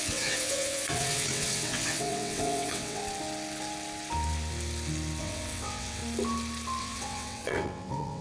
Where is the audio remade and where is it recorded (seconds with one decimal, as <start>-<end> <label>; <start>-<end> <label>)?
0.0-3.0 remade; 3.0-5.2 recorded; 5.2-6.0 remade; 6.0-6.8 recorded; 6.8-8.2 remade